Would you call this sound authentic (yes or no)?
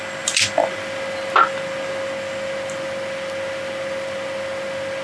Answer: yes